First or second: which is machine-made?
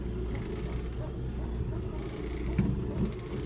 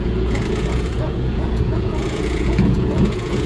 second